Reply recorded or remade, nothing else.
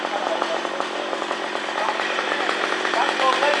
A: remade